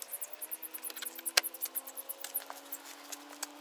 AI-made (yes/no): no